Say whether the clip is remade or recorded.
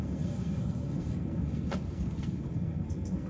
remade